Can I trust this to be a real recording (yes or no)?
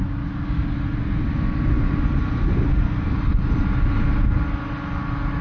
yes